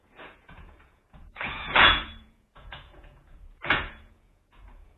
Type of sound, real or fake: fake